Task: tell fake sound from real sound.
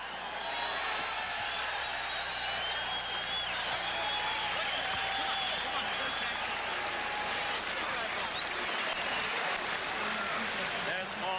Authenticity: real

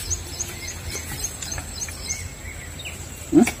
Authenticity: real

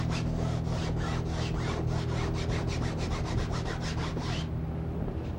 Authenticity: real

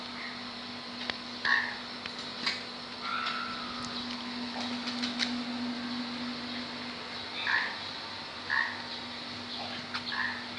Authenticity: real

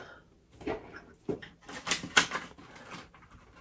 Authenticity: real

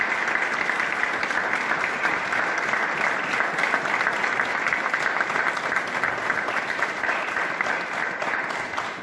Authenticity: real